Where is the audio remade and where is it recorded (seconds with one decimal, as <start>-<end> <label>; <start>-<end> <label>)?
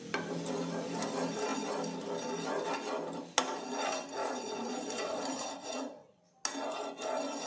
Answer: 0.0-4.2 recorded; 4.2-6.2 remade; 6.2-7.5 recorded